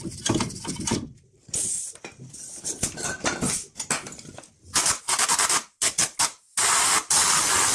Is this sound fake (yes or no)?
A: no